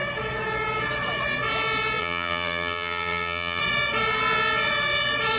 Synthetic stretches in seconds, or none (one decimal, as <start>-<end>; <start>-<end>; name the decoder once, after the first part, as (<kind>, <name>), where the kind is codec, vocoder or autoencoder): 2.0-3.6 (vocoder, BigVGAN v2)